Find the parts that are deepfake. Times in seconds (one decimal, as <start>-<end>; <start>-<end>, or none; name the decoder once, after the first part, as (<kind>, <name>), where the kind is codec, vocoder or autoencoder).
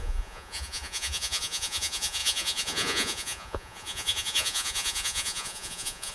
0.0-6.1 (vocoder, Vocos)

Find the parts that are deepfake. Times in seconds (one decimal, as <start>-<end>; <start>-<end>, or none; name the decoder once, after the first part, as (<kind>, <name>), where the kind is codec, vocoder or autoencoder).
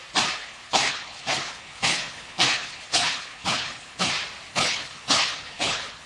0.4-4.1 (codec, HILCodec); 4.5-6.1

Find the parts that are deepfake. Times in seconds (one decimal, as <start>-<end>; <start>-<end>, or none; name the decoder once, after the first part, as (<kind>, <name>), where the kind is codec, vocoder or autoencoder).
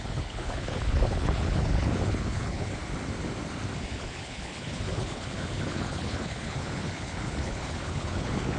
0.0-2.8 (codec, HILCodec); 3.9-8.6